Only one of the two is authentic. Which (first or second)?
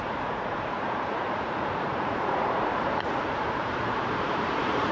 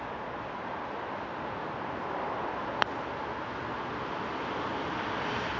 second